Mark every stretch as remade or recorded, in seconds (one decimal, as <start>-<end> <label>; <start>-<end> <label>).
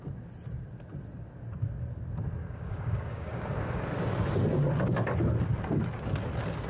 0.0-2.4 recorded; 2.4-3.8 remade; 3.8-6.7 recorded